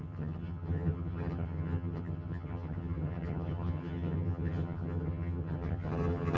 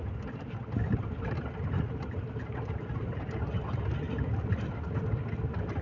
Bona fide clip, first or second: second